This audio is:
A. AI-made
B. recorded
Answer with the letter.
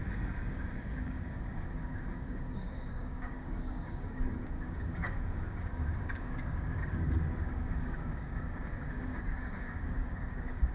A